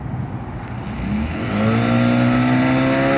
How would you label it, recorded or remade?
recorded